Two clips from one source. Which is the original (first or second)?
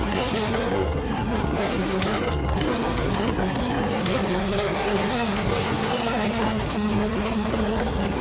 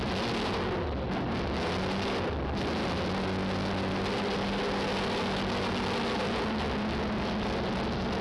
second